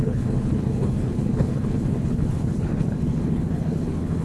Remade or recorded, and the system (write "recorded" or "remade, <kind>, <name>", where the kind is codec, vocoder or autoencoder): remade, codec, HILCodec